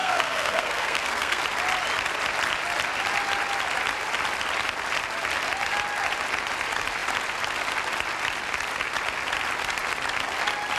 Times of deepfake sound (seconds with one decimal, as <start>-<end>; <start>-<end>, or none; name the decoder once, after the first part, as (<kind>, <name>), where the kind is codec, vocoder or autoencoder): 0.0-1.4 (codec, SNAC)